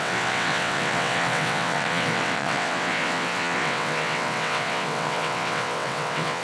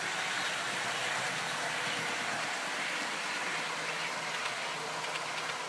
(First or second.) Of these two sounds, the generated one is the first